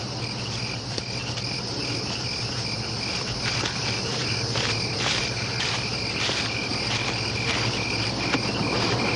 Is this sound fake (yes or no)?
no